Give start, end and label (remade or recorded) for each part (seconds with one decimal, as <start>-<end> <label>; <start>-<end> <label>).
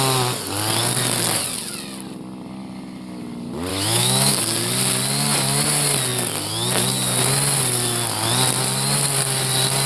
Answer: 0.0-3.7 recorded; 3.7-4.4 remade; 4.4-9.9 recorded